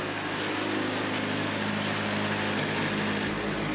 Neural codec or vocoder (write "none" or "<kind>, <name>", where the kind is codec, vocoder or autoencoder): none